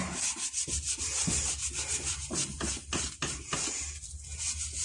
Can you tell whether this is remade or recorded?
recorded